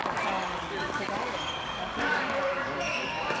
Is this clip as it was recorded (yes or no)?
no